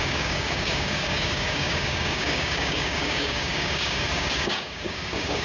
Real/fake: fake